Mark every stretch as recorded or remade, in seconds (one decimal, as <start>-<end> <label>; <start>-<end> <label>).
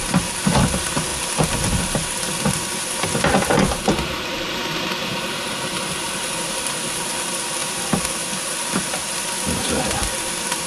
0.0-5.1 recorded; 5.1-7.1 remade; 7.1-7.6 recorded; 7.6-8.1 remade; 8.1-10.7 recorded